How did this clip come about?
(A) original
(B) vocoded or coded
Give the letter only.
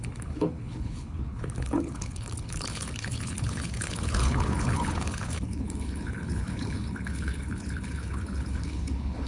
B